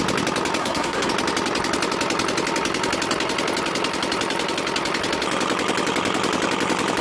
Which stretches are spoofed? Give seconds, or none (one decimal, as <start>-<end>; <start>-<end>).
0.6-1.1